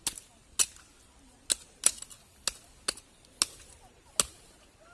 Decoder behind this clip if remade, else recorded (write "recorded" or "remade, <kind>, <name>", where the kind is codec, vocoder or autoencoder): recorded